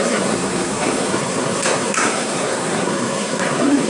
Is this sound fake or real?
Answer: fake